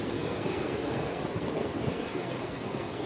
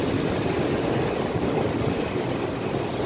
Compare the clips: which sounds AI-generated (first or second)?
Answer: first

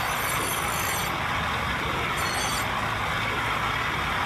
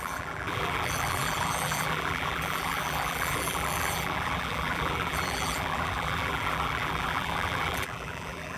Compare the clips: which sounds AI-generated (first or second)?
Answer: second